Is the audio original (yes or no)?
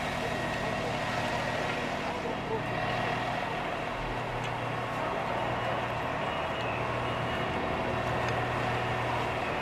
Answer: yes